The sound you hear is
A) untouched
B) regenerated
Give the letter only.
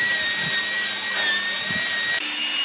A